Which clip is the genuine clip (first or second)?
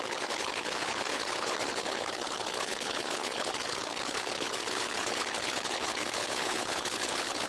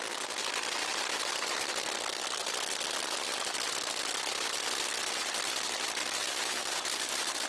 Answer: second